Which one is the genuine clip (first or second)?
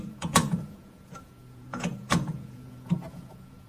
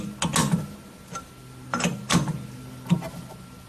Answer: second